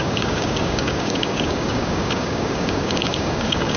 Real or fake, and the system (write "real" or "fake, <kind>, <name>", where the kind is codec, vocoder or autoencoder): fake, codec, DAC